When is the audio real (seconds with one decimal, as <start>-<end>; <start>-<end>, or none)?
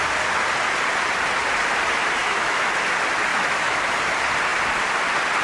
0.0-2.2; 2.7-3.3; 4.0-5.4